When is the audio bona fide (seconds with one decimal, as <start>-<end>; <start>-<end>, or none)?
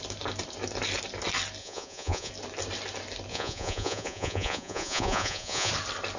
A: 0.0-1.6; 2.3-3.3; 5.7-6.2